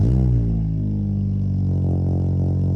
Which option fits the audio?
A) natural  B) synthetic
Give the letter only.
A